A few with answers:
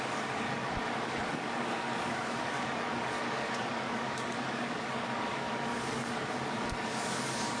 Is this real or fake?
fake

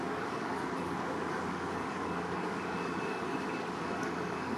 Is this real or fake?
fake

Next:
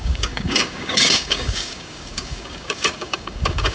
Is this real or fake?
fake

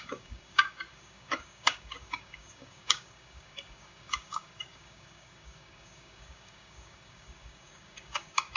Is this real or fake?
fake